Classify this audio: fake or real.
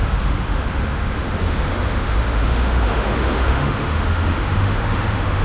fake